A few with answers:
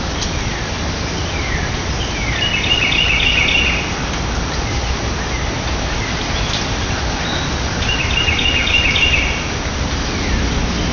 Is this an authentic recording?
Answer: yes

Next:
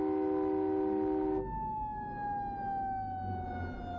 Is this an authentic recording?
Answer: yes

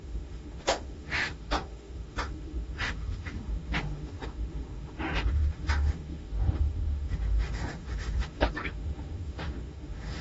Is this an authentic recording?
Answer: no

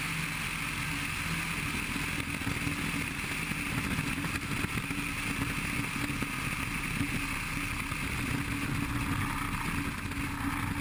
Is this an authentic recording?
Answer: yes